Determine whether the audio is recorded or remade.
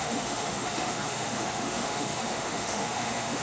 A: remade